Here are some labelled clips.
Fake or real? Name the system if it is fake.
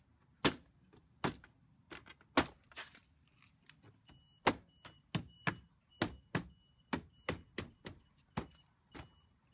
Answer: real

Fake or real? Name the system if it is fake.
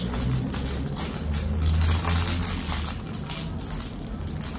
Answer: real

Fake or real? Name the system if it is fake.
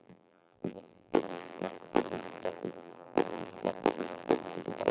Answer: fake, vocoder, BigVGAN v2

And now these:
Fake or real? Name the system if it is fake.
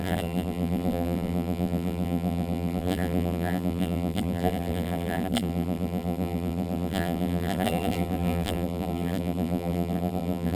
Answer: fake, vocoder, BigVGAN v2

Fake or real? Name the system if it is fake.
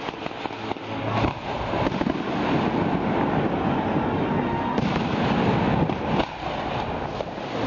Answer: real